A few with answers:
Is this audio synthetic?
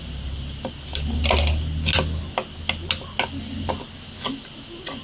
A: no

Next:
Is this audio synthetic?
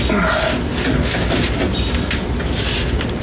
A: no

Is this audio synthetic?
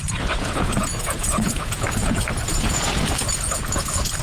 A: yes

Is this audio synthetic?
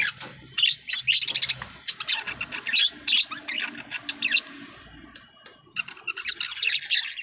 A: no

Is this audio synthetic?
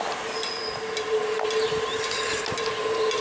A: no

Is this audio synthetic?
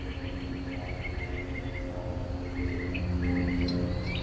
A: no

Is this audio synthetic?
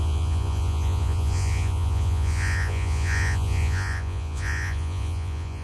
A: yes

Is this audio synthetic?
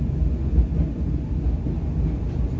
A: no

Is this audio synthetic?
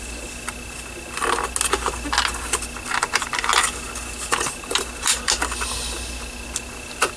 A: no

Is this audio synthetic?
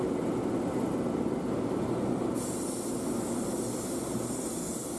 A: no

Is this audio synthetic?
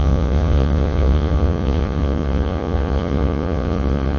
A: yes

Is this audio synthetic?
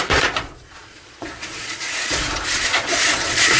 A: yes